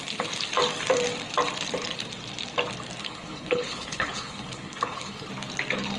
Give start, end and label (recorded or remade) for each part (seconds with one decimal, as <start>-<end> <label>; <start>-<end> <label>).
0.0-3.0 recorded; 3.0-5.3 remade; 5.3-6.0 recorded